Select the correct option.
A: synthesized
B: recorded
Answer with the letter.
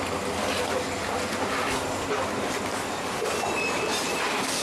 B